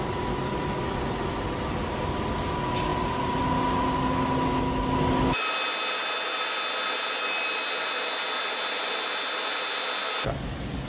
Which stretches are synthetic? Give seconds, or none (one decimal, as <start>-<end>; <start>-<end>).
none